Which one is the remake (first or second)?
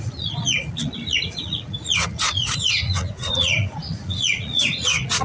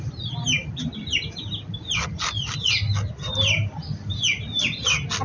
first